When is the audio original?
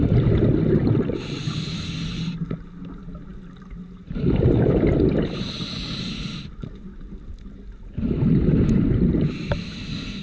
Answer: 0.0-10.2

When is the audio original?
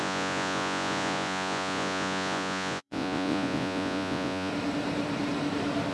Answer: 4.5-5.9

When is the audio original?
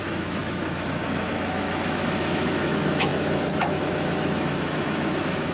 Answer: none